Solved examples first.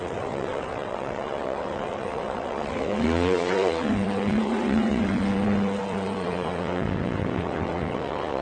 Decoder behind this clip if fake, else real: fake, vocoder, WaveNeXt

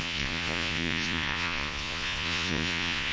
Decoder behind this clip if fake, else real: fake, vocoder, Vocos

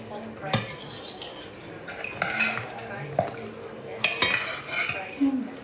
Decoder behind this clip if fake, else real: real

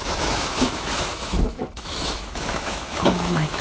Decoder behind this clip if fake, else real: fake, autoencoder, DAC-VAE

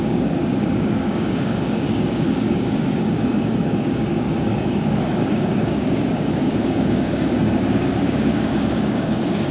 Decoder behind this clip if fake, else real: fake, codec, DAC